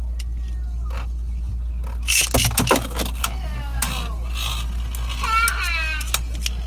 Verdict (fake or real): real